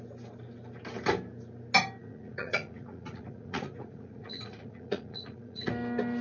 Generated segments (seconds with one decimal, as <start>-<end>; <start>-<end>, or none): 2.0-5.7